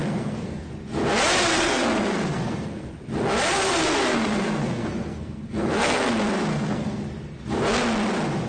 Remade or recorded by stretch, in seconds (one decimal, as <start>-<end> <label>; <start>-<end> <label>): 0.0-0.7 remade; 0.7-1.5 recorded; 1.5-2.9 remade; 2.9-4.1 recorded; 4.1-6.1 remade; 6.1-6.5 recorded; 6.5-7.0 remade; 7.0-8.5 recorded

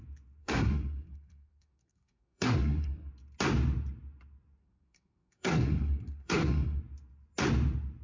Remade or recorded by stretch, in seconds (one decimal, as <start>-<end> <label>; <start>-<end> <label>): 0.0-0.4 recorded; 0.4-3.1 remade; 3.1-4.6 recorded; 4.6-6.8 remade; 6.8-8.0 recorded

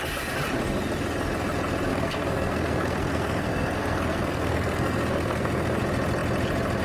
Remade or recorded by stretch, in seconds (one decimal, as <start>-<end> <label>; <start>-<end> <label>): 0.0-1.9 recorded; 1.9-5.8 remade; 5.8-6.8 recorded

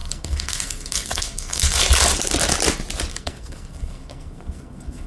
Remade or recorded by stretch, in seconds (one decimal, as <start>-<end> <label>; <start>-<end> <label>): 0.0-1.8 remade; 1.8-3.1 recorded; 3.1-5.1 remade

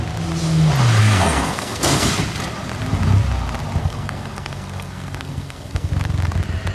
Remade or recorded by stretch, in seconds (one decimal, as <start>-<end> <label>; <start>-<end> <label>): 0.0-1.0 recorded; 1.0-2.1 remade; 2.1-3.8 recorded; 3.8-5.9 remade; 5.9-6.7 recorded

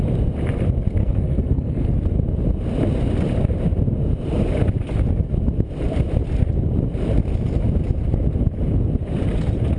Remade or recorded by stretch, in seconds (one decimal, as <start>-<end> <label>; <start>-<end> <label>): 0.0-1.0 recorded; 1.0-1.9 remade; 1.9-9.8 recorded

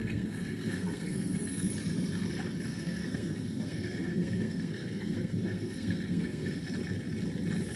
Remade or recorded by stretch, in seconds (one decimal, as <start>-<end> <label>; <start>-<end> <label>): 0.0-1.7 remade; 1.7-2.7 recorded; 2.7-6.6 remade; 6.6-7.8 recorded